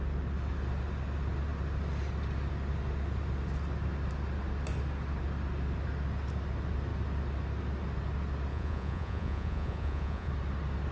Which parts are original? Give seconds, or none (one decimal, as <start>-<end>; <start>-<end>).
0.0-8.5; 10.3-10.9